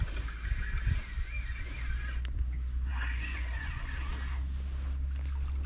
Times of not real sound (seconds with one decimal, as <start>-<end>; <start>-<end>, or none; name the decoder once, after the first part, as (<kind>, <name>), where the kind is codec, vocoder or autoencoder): 2.9-3.8 (vocoder, Vocos)